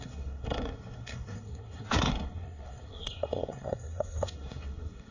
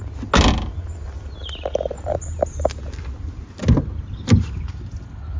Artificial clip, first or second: first